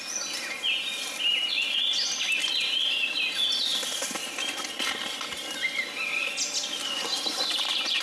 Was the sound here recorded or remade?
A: recorded